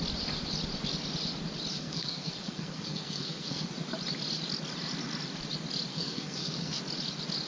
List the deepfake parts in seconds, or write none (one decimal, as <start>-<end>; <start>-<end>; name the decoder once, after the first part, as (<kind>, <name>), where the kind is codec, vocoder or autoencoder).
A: 1.7-3.7 (codec, SNAC); 5.9-6.8